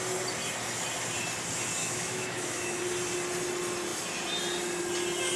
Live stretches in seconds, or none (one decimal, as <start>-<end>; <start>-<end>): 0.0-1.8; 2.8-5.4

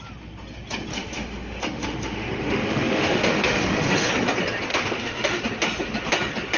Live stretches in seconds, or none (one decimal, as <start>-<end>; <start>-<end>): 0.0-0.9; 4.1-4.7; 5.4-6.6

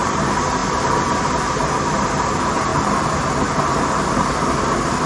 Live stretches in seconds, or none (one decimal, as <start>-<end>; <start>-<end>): 0.0-5.1

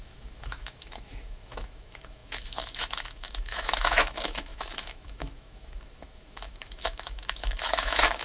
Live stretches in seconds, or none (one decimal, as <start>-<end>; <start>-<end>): none

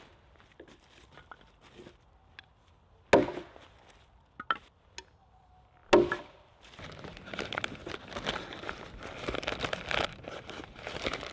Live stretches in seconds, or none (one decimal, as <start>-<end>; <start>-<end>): 0.0-11.3

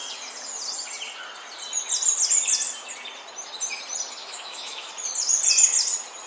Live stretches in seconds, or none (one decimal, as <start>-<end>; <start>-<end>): 0.0-4.2; 4.9-6.3